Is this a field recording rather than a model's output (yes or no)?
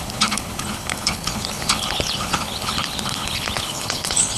no